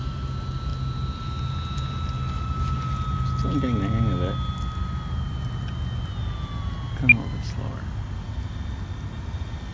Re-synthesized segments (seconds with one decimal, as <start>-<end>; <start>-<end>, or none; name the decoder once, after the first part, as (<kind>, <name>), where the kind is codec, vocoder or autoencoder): none